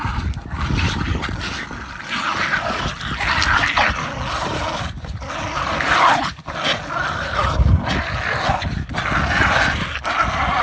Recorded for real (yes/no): yes